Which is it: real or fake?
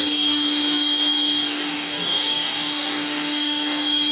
fake